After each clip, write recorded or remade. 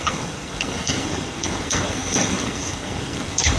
remade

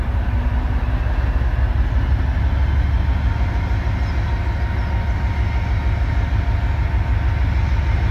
recorded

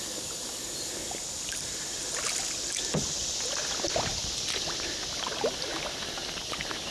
recorded